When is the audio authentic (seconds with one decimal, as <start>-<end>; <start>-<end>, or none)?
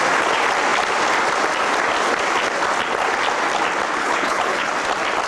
0.0-4.0; 4.7-5.3